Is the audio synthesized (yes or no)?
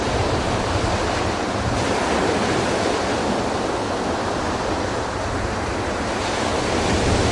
no